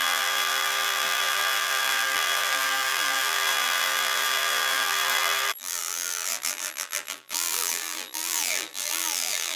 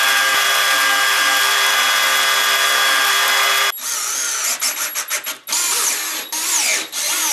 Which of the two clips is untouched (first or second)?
second